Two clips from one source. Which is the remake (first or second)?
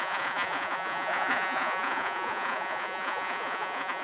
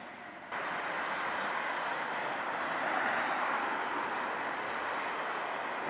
first